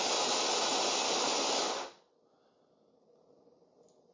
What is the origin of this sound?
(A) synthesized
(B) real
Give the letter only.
B